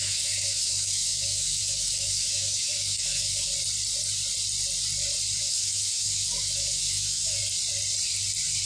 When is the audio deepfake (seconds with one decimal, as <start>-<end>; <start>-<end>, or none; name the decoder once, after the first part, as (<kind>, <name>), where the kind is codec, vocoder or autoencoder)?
0.0-3.5 (autoencoder, DAC-VAE); 5.4-7.4